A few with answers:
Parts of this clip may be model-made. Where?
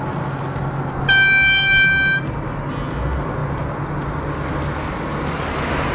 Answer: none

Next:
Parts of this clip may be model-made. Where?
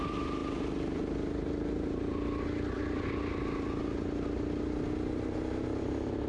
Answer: none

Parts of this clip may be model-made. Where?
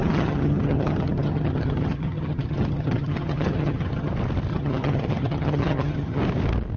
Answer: 0.0-4.1; 4.5-6.2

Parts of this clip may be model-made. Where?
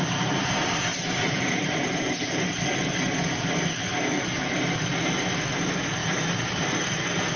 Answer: 0.0-2.7; 3.2-3.9; 4.7-7.4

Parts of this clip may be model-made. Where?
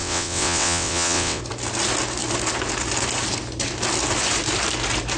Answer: 0.0-1.4